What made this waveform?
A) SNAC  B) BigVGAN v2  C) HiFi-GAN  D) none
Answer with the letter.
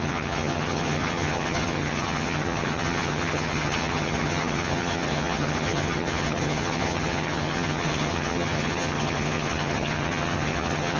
C